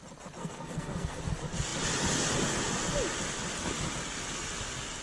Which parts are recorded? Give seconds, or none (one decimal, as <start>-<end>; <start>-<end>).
0.0-0.4; 1.2-5.0